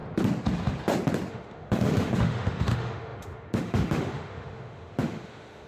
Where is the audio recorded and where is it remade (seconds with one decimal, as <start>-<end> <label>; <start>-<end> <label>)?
0.0-1.3 recorded; 1.3-5.7 remade